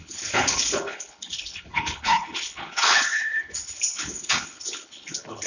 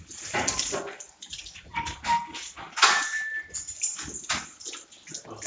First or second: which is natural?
second